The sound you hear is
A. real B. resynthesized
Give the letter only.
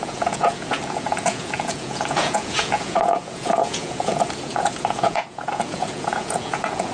B